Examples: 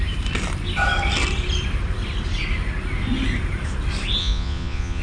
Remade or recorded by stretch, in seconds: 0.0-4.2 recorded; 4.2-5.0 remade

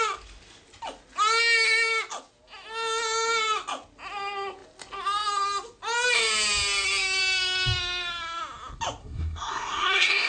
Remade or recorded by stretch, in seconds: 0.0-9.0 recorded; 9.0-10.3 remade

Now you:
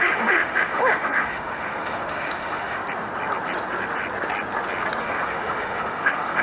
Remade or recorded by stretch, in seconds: 0.0-2.8 remade; 2.8-5.0 recorded; 5.0-6.4 remade

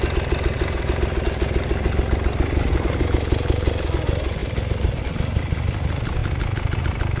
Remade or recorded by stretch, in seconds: 0.0-7.2 recorded

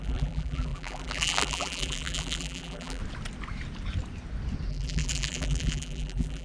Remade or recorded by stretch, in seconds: 0.0-3.0 remade; 3.0-4.7 recorded; 4.7-6.4 remade

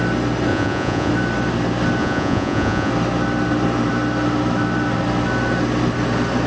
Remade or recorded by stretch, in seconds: 0.0-0.5 recorded; 0.5-1.1 remade; 1.1-2.0 recorded; 2.0-2.9 remade; 2.9-6.5 recorded

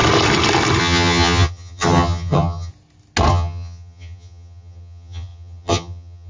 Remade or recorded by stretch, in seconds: 0.0-0.8 recorded; 0.8-2.7 remade; 2.7-3.3 recorded; 3.3-6.3 remade